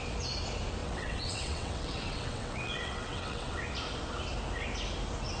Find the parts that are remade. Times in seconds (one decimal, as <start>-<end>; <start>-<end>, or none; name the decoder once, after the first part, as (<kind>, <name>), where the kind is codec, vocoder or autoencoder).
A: 0.8-3.6 (vocoder, WaveNeXt)